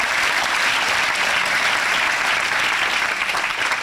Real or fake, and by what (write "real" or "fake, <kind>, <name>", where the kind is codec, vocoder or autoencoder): real